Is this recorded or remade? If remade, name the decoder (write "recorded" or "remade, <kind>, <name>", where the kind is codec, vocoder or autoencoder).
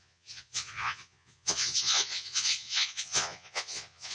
remade, vocoder, Vocos